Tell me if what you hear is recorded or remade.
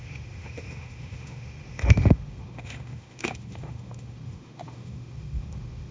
remade